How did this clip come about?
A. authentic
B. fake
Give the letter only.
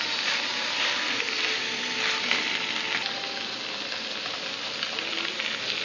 A